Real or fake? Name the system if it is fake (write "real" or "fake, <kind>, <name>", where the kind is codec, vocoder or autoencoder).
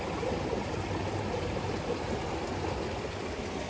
real